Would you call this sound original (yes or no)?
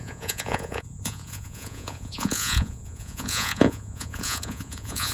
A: no